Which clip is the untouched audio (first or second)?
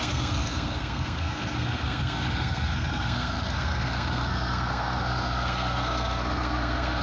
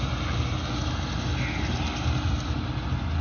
second